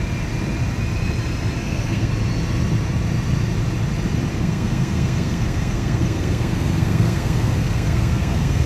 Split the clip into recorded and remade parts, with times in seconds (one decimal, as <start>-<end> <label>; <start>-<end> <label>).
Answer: 0.0-1.6 recorded; 1.6-2.1 remade; 2.1-4.3 recorded; 4.3-8.7 remade